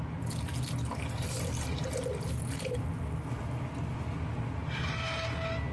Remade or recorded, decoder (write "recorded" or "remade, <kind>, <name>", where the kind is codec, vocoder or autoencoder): recorded